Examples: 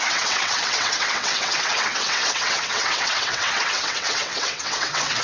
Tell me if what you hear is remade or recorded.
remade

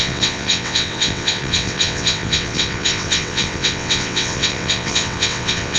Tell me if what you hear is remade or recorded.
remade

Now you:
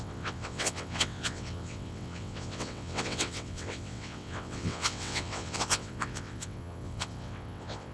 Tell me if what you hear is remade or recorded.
remade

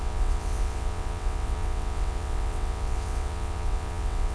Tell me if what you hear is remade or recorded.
remade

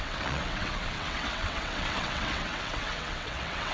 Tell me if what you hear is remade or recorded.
remade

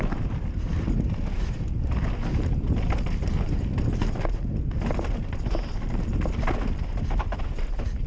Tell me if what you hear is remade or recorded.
recorded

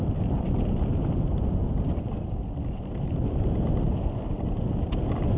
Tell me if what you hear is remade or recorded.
recorded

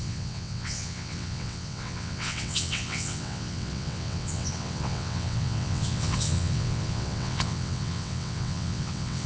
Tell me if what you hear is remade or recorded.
remade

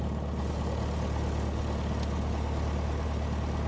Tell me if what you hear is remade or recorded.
recorded